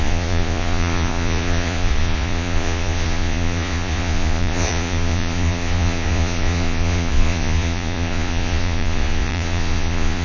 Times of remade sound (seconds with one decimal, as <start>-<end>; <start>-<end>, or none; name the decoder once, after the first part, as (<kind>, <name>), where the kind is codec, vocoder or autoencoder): 0.0-10.2 (vocoder, Vocos)